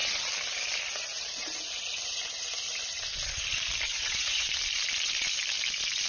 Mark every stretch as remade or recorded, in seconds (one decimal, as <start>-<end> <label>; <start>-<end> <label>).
0.0-3.9 recorded; 3.9-4.5 remade; 4.5-6.1 recorded